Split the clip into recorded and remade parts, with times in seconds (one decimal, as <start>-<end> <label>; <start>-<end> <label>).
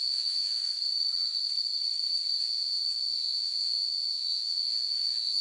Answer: 0.0-0.6 remade; 0.6-2.4 recorded; 2.4-5.4 remade